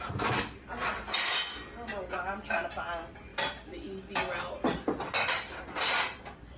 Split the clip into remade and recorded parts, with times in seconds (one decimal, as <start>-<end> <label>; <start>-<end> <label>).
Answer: 0.0-6.6 recorded